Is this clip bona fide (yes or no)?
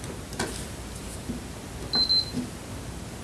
yes